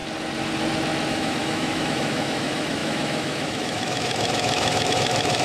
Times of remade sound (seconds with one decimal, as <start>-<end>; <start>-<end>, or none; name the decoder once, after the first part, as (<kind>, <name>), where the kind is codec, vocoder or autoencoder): 1.1-5.4 (autoencoder, DAC-VAE)